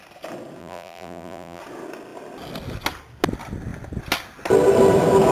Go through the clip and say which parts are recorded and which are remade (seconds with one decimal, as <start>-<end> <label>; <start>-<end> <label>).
0.0-0.6 recorded; 0.6-1.6 remade; 1.6-5.3 recorded